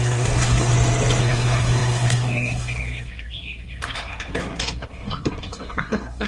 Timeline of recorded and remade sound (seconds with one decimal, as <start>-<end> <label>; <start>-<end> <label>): 0.0-0.7 remade; 0.7-1.2 recorded; 1.2-6.3 remade